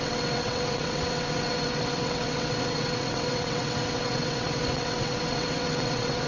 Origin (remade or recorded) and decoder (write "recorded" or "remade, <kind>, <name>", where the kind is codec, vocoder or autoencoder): remade, vocoder, WaveNeXt